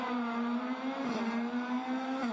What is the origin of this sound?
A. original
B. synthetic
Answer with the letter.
B